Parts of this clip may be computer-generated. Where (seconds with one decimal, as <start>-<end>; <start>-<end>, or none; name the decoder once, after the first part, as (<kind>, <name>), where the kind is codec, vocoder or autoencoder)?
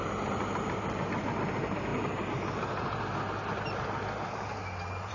none